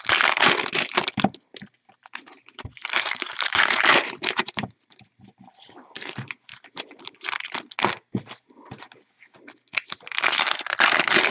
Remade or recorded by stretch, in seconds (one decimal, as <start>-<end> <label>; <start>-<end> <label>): 0.0-2.0 recorded; 2.0-6.1 remade; 6.1-11.3 recorded